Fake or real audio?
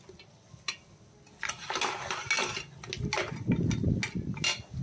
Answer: real